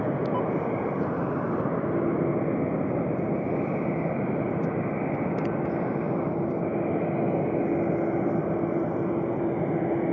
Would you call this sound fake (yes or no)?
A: no